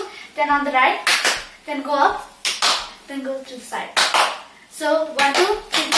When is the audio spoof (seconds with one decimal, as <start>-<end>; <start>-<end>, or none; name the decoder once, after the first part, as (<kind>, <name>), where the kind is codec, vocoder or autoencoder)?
none